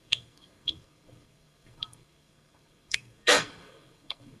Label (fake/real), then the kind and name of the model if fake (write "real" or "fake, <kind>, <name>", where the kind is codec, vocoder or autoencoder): fake, codec, SNAC